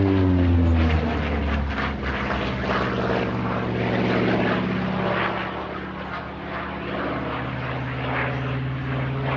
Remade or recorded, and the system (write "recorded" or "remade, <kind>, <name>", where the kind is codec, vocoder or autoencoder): recorded